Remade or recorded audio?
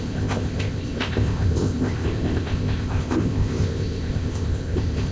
remade